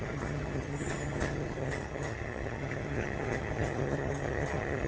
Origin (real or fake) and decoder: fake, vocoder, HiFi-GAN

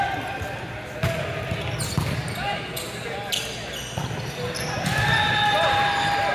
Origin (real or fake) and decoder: real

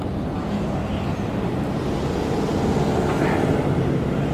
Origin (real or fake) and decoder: real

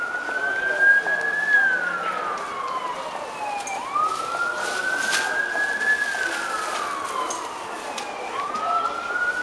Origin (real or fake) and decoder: real